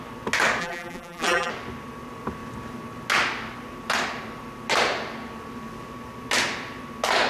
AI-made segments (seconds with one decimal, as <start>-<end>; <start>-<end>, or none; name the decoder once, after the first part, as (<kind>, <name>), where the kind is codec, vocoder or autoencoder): 0.6-1.5 (vocoder, BigVGAN v2)